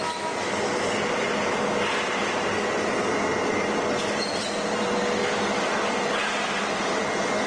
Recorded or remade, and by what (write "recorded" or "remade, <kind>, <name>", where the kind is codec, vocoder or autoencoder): recorded